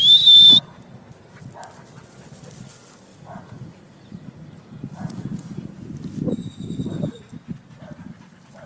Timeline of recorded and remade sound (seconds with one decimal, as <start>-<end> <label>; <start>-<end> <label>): 0.0-3.1 recorded; 3.1-5.7 remade; 5.7-8.7 recorded